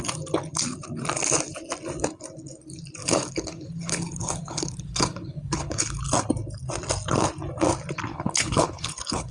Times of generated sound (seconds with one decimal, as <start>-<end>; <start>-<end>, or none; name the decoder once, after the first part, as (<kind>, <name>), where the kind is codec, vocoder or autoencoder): 3.0-6.0 (codec, HILCodec); 8.1-9.3